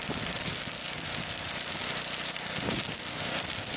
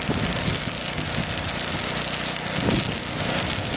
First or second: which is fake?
first